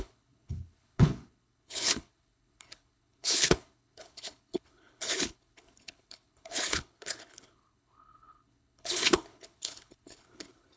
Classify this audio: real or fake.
fake